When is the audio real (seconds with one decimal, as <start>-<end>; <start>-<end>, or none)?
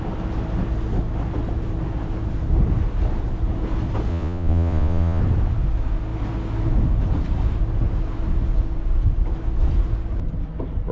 0.0-4.1; 5.2-10.9